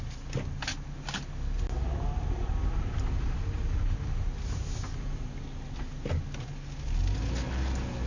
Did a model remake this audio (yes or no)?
no